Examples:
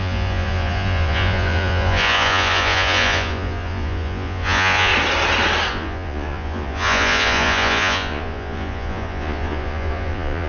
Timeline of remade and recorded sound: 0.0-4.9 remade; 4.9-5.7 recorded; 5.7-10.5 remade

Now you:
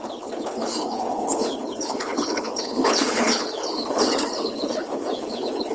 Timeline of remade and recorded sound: 0.0-5.7 remade

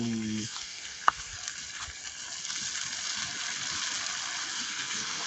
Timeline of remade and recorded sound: 0.0-1.3 remade; 1.3-4.5 recorded; 4.5-5.3 remade

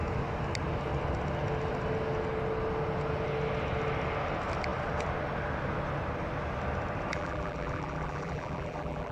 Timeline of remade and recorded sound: 0.0-7.1 recorded; 7.1-9.1 remade

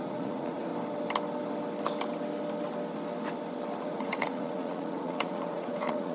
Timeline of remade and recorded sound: 0.0-0.7 remade; 0.7-3.8 recorded; 3.8-6.1 remade

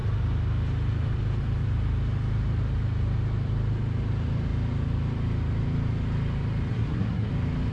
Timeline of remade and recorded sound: 0.0-6.7 recorded; 6.7-7.3 remade; 7.3-7.7 recorded

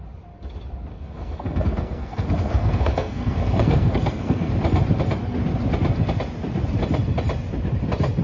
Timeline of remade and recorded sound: 0.0-0.9 recorded; 0.9-4.5 remade; 4.5-8.2 recorded